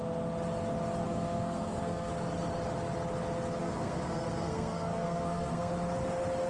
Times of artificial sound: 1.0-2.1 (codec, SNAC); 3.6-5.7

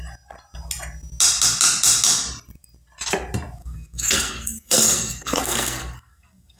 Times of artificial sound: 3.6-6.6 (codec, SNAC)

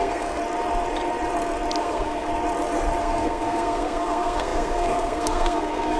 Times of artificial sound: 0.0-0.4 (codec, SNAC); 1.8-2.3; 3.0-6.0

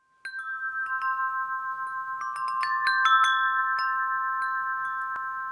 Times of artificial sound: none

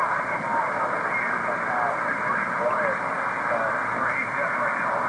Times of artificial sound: none